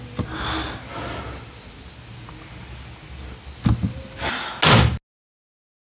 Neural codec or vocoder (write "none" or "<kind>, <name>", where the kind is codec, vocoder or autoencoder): none